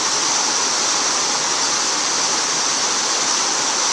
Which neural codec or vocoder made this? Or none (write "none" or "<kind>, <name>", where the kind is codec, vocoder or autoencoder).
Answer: none